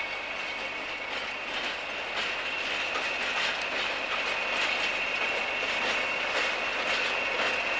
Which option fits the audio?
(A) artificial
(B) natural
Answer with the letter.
B